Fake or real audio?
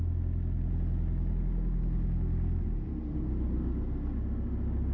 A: real